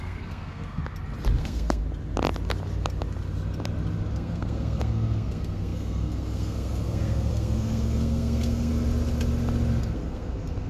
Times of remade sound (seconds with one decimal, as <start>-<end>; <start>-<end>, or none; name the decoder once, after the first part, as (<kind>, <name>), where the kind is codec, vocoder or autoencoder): 0.0-0.8 (codec, SNAC); 1.4-1.8; 4.1-8.7; 9.8-10.7